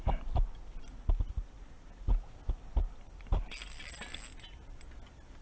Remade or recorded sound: recorded